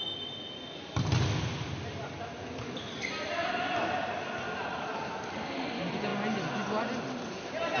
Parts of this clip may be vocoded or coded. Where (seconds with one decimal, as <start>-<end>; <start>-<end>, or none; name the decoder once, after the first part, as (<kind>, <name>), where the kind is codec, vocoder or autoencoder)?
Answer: none